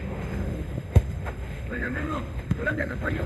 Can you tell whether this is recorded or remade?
remade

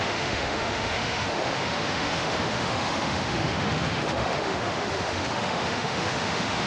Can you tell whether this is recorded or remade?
remade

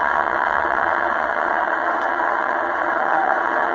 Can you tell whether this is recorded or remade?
remade